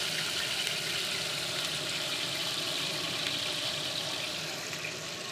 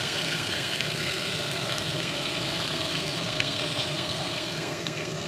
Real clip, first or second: first